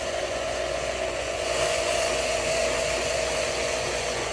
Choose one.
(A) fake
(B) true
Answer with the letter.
A